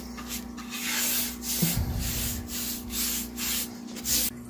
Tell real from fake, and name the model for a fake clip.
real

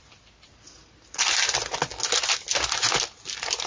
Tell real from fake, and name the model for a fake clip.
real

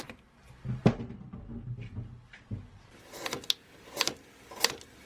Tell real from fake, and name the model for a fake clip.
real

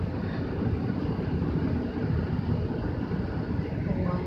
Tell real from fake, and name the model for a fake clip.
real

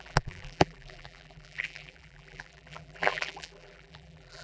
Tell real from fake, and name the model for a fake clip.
fake, vocoder, BigVGAN v2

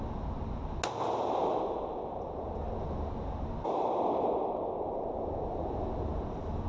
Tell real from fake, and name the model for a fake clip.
real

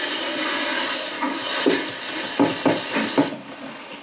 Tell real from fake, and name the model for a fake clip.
real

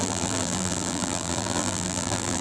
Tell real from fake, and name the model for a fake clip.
fake, vocoder, BigVGAN v2